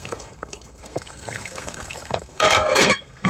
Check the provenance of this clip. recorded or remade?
remade